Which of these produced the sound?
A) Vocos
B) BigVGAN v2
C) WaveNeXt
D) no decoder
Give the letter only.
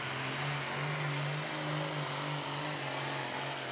D